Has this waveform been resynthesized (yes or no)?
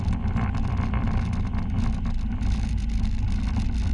no